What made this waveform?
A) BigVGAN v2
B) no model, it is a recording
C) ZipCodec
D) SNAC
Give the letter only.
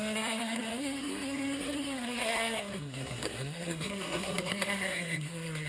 D